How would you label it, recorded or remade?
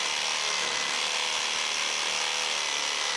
recorded